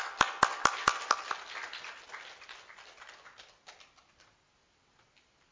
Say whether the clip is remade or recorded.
recorded